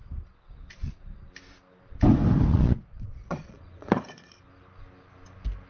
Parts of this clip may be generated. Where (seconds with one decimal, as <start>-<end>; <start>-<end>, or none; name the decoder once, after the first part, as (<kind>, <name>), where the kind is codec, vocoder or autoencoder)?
0.0-1.3 (vocoder, Vocos); 2.5-4.4